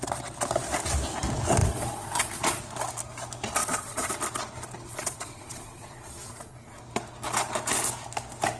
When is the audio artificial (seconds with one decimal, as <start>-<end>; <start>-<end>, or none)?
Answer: 1.6-2.6; 3.6-4.1; 4.9-6.8